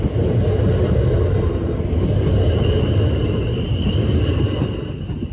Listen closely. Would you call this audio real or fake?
real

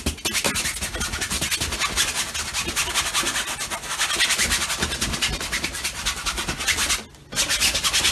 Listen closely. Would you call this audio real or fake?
real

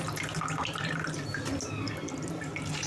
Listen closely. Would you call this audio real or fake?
real